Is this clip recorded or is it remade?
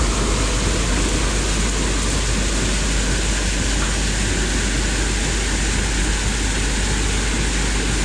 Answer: recorded